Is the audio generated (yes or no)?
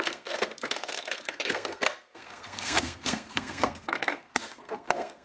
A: yes